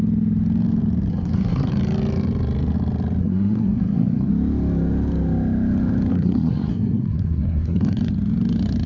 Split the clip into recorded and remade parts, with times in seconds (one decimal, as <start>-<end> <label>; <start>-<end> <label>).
0.0-1.1 recorded; 1.1-1.7 remade; 1.7-3.2 recorded; 3.2-4.3 remade; 4.3-6.1 recorded; 6.1-8.1 remade; 8.1-8.9 recorded